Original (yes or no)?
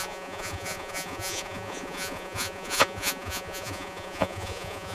no